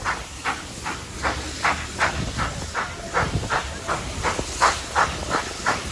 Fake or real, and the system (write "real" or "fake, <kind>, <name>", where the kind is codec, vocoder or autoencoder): real